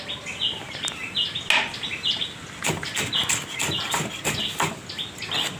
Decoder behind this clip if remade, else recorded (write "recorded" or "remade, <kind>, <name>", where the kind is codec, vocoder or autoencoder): recorded